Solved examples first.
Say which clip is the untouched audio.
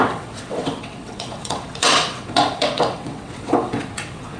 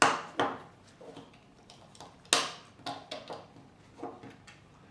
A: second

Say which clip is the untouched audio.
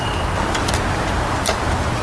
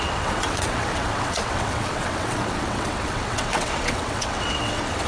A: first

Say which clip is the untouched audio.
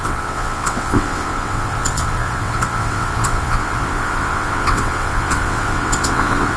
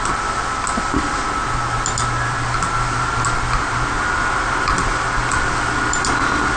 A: second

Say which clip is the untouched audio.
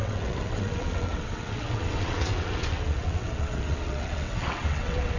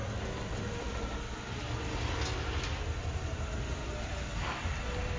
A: second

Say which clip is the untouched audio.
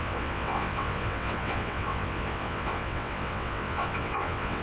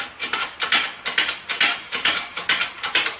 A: second